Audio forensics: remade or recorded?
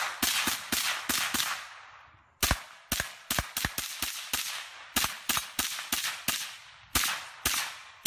recorded